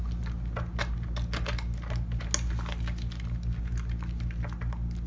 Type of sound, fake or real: real